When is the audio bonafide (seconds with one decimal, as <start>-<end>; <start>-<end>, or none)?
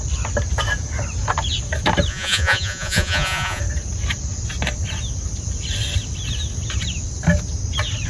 0.0-2.1; 3.6-8.1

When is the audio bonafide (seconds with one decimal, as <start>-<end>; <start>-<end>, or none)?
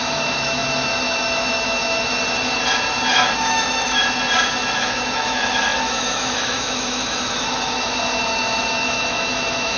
2.1-3.1; 4.0-4.7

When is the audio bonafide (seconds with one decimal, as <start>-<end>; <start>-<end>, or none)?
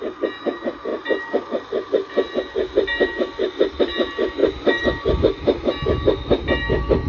0.0-7.1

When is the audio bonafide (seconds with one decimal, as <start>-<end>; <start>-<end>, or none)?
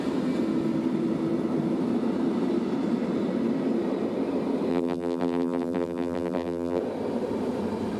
0.0-4.7; 6.8-8.0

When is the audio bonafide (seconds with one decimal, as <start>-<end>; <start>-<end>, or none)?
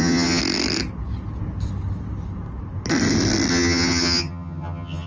0.4-3.5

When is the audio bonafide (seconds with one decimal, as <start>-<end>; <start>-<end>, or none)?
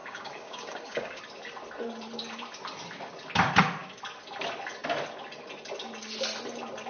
1.2-6.9